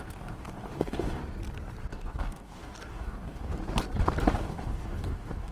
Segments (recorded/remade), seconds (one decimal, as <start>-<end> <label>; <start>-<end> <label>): 0.0-1.2 remade; 1.2-1.9 recorded; 1.9-3.5 remade; 3.5-4.3 recorded; 4.3-5.5 remade